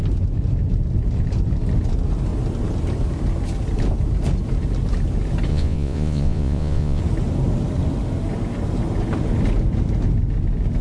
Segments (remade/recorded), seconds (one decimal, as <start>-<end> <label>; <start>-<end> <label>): 0.0-5.5 recorded; 5.5-7.0 remade; 7.0-10.8 recorded